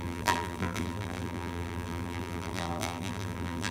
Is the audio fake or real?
fake